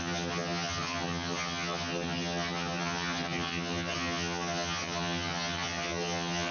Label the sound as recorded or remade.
remade